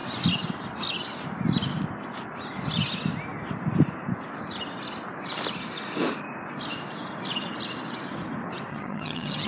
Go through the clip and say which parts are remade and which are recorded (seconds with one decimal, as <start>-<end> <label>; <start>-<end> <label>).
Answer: 0.0-8.7 recorded; 8.7-9.5 remade